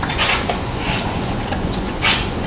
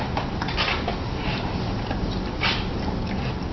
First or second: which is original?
second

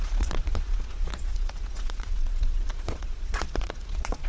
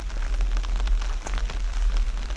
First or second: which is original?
second